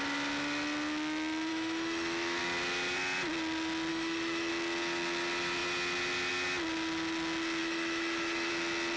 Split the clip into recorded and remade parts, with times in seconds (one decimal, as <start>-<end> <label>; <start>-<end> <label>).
0.0-1.5 recorded; 1.5-2.4 remade; 2.4-3.9 recorded; 3.9-4.5 remade; 4.5-7.6 recorded; 7.6-8.5 remade; 8.5-9.0 recorded